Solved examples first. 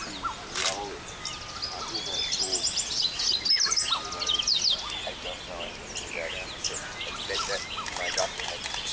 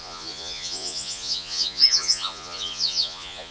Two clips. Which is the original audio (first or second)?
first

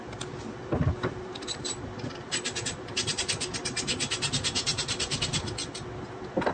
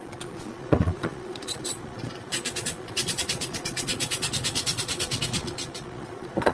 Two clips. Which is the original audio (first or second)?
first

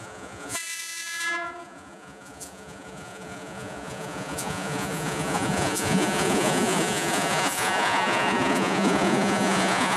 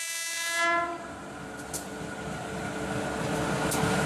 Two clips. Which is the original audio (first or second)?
second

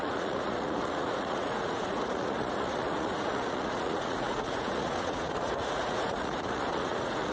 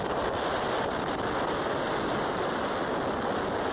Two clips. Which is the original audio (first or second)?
second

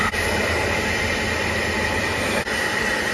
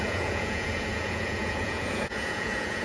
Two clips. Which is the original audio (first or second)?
first